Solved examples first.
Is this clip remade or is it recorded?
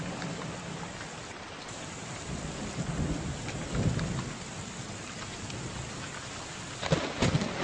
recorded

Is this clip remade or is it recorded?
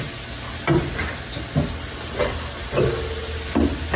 recorded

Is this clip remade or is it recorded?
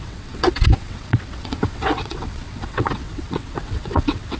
remade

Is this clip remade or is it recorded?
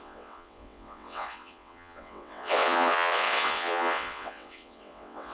remade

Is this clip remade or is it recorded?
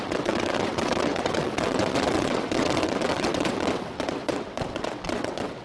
remade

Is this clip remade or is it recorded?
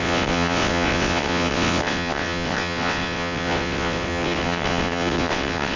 remade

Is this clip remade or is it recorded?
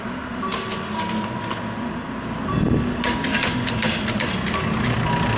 recorded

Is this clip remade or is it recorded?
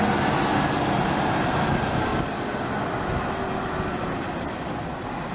recorded